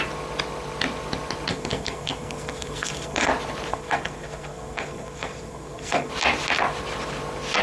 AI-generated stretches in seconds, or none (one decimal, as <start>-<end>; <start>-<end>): 1.5-3.3; 3.7-6.1